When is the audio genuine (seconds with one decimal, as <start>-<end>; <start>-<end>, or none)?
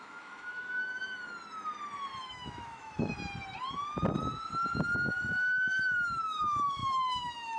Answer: 1.2-2.2; 3.1-5.2